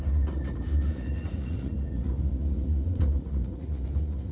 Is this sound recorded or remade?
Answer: remade